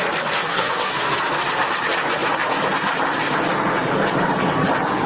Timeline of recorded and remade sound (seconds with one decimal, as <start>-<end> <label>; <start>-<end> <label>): 0.0-0.4 recorded; 0.4-1.2 remade; 1.2-5.1 recorded